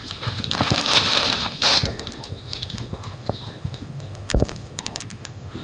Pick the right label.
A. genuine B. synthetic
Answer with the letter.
B